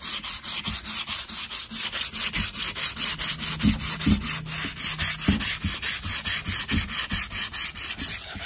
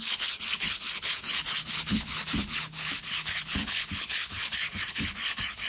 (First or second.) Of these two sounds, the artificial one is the second